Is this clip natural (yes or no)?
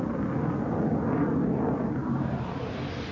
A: yes